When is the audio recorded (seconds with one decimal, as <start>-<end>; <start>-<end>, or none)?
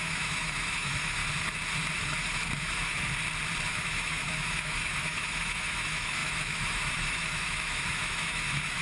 1.2-1.9; 3.1-3.7